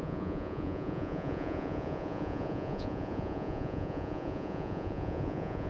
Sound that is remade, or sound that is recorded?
remade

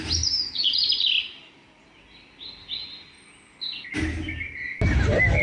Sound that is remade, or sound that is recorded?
recorded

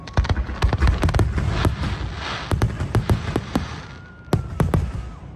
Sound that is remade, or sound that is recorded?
recorded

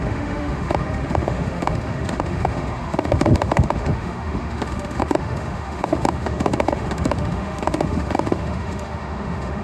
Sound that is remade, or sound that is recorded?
remade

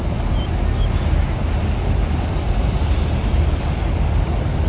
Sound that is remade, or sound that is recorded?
recorded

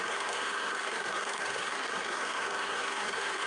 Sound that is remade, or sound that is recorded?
remade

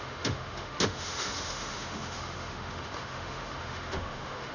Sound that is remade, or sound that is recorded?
remade